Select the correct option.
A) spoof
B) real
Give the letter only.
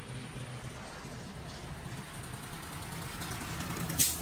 B